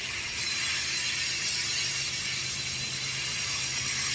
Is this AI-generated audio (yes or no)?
no